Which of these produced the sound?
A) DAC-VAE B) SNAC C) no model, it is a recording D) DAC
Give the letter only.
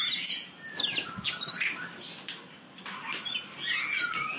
C